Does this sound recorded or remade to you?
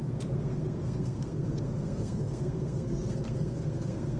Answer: remade